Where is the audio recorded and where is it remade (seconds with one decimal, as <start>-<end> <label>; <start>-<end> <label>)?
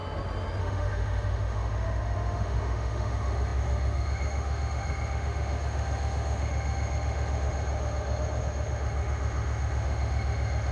0.0-0.6 recorded; 0.6-10.7 remade